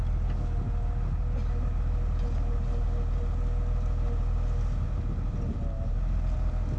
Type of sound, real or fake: real